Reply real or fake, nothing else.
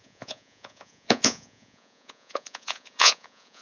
fake